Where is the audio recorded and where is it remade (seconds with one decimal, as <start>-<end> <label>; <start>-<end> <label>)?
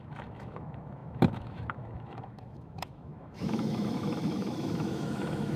0.0-5.6 remade